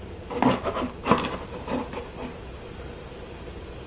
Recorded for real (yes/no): yes